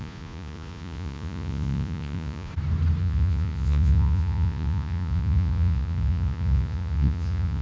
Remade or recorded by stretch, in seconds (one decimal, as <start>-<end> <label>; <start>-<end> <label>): 0.0-2.5 remade; 2.5-3.0 recorded; 3.0-7.6 remade